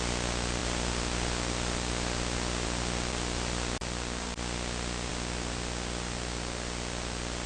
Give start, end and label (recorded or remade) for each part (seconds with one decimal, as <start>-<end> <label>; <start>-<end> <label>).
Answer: 0.0-7.5 recorded